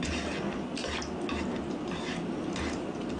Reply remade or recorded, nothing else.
recorded